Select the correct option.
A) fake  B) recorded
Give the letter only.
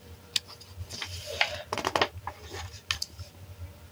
B